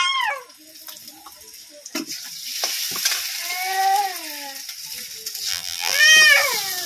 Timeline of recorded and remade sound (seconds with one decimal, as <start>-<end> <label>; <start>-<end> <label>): 0.0-5.5 recorded; 5.5-6.0 remade; 6.0-6.9 recorded